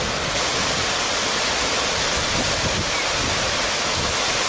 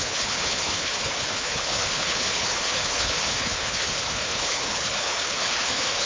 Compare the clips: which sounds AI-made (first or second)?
second